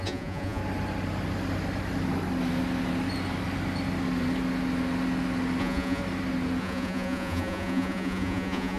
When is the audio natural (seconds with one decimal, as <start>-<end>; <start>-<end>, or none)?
0.6-5.6; 6.0-6.6